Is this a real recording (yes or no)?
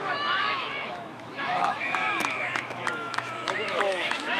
no